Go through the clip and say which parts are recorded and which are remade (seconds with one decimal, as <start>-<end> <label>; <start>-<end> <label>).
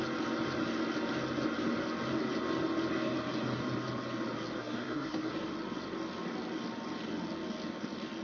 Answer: 0.0-4.6 recorded; 4.6-5.3 remade; 5.3-8.2 recorded